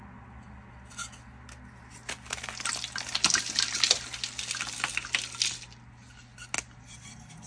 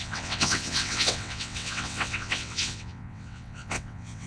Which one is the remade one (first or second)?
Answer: second